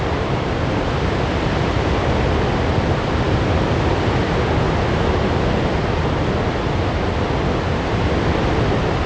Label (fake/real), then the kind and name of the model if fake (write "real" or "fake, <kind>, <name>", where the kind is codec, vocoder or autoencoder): real